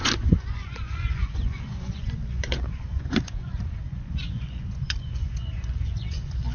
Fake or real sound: fake